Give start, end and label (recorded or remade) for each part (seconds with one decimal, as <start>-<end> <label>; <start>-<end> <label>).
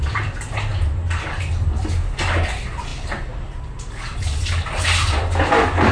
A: 0.0-5.9 recorded